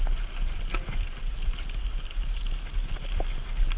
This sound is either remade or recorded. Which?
recorded